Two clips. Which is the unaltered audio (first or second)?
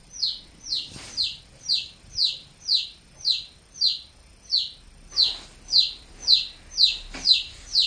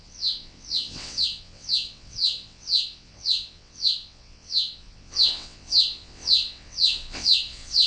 first